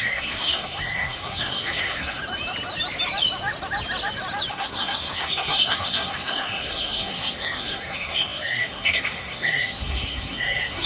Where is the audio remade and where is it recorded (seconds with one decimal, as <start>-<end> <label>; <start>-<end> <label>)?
0.0-2.2 remade; 2.2-4.5 recorded; 4.5-10.9 remade